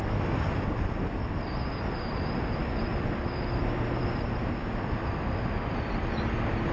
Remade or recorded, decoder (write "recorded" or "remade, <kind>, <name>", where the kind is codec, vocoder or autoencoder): recorded